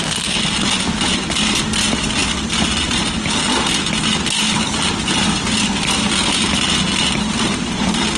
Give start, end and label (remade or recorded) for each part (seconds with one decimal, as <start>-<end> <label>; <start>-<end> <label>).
0.0-8.2 recorded